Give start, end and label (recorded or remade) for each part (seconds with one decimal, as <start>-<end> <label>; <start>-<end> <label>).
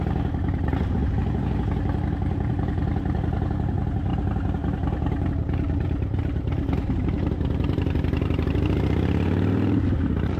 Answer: 0.0-10.4 remade